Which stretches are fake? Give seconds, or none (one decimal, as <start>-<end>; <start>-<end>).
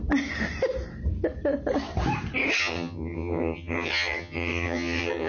2.6-5.3